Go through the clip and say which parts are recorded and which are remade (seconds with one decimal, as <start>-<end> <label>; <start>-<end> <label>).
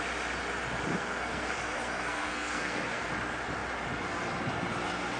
0.0-0.9 recorded; 0.9-3.1 remade; 3.1-5.2 recorded